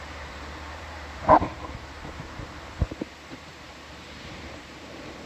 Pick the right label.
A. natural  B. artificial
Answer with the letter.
B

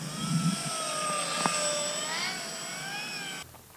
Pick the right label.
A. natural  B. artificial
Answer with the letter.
A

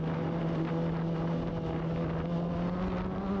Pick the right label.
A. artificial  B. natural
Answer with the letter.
B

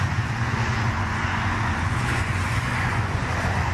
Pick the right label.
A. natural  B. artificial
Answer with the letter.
B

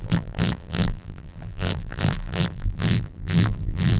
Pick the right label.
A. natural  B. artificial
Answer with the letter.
B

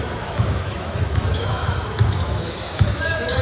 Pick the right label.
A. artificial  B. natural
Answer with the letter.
A